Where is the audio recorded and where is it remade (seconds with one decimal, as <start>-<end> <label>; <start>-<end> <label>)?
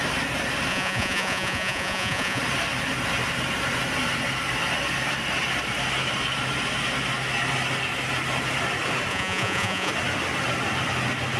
0.0-0.7 recorded; 0.7-2.4 remade; 2.4-9.1 recorded; 9.1-9.9 remade; 9.9-11.4 recorded